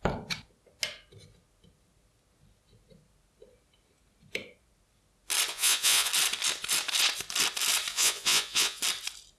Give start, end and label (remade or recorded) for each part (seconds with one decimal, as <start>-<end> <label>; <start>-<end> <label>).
0.0-5.5 recorded; 5.5-6.1 remade; 6.1-7.9 recorded; 7.9-8.8 remade; 8.8-9.4 recorded